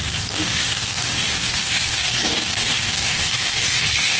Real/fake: fake